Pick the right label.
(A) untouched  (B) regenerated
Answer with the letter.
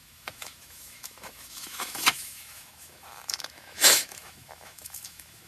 B